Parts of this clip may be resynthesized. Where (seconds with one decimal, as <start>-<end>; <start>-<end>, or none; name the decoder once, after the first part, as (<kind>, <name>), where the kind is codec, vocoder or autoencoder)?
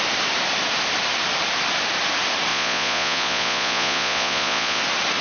2.5-4.8 (vocoder, Vocos)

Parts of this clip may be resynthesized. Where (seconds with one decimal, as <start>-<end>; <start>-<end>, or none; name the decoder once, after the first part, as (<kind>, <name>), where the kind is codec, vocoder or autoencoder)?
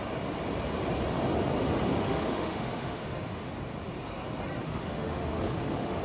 1.9-3.5 (autoencoder, DAC-VAE); 4.6-6.0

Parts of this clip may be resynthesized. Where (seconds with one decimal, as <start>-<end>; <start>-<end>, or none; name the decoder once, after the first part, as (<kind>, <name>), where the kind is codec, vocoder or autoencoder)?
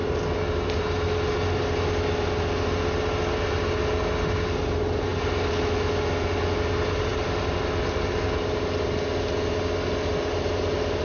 none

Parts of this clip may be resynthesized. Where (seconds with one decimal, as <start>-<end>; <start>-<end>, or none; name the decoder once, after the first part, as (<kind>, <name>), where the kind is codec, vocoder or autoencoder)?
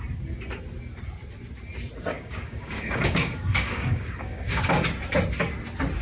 2.1-4.7 (codec, DAC)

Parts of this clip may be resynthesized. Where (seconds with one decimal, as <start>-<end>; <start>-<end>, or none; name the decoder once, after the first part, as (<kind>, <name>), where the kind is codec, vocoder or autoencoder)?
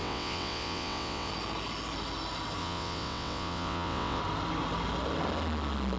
0.0-1.3 (vocoder, WaveNeXt); 2.6-4.2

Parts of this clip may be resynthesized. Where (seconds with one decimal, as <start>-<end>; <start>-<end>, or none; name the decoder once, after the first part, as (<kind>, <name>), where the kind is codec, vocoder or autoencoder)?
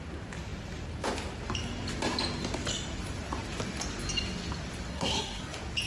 4.9-5.4 (codec, SNAC)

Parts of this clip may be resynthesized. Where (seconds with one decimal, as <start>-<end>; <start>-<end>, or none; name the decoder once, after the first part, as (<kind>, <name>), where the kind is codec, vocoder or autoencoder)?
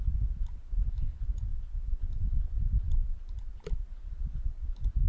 none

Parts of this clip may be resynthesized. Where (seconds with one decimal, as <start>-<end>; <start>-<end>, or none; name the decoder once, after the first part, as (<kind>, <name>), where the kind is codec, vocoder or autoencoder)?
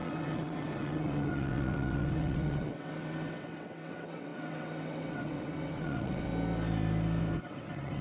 0.0-6.3 (vocoder, WaveNeXt); 7.4-8.0